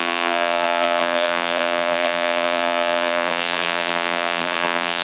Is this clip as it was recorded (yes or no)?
no